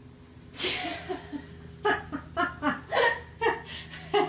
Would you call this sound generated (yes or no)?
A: no